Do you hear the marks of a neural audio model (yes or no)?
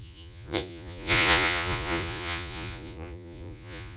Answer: yes